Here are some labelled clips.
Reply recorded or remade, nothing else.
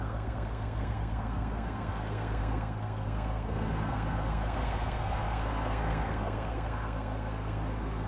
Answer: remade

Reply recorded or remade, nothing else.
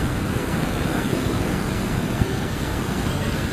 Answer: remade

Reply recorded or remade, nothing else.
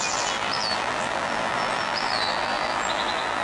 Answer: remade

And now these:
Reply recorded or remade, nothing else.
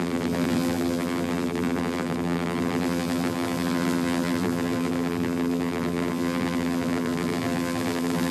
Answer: remade